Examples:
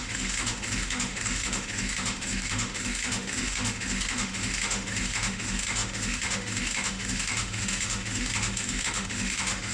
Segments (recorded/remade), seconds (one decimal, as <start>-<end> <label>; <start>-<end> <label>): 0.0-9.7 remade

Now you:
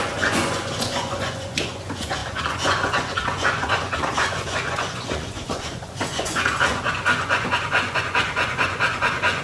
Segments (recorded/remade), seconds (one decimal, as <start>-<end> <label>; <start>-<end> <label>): 0.0-9.4 remade

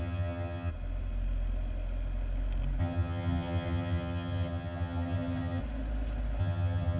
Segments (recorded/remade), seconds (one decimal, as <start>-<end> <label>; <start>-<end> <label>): 0.0-0.7 remade; 0.7-2.8 recorded; 2.8-5.6 remade; 5.6-6.4 recorded; 6.4-7.0 remade